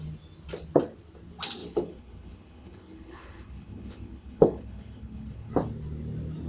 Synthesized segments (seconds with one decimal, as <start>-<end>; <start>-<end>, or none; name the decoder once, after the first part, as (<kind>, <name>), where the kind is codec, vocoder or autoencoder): 1.6-5.5 (codec, HILCodec)